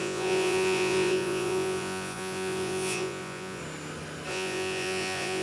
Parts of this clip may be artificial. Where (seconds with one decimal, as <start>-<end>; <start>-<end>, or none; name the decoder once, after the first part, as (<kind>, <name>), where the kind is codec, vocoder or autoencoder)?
0.0-3.6 (vocoder, Vocos); 4.3-5.4